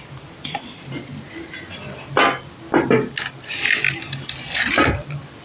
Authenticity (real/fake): real